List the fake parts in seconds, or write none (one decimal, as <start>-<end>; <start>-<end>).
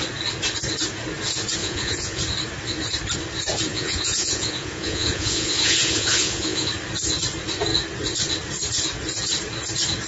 1.6-2.2; 3.7-6.7